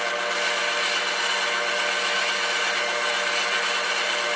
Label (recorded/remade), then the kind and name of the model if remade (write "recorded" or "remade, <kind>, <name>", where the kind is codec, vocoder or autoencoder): recorded